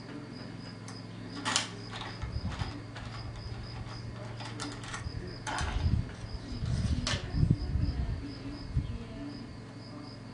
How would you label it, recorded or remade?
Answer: recorded